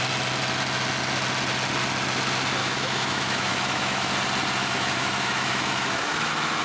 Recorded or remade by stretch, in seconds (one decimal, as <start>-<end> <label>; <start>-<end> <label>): 0.0-2.6 recorded; 2.6-4.1 remade; 4.1-4.6 recorded; 4.6-6.6 remade